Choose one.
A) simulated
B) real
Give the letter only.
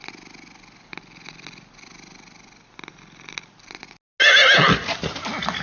B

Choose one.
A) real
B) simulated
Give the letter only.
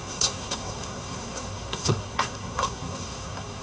B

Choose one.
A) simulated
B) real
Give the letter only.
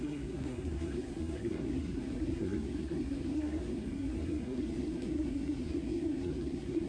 A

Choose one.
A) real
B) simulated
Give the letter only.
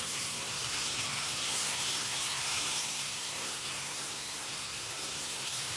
B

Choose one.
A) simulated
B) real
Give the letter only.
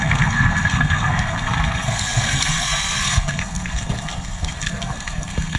A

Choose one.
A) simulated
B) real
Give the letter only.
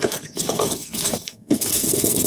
A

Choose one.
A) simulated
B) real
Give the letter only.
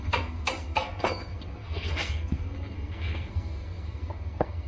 A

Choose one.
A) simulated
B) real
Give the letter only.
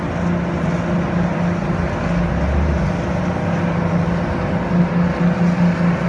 B